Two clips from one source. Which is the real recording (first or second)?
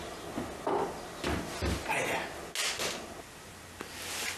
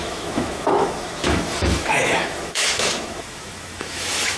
first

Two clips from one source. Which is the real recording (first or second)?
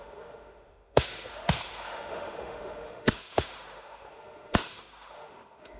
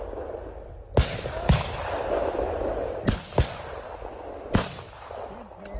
second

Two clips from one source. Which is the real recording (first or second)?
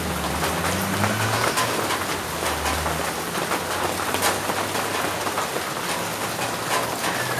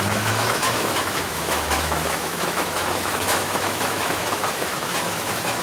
first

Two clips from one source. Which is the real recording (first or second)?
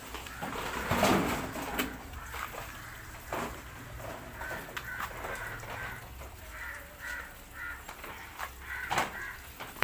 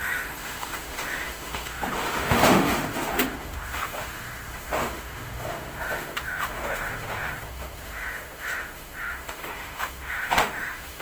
first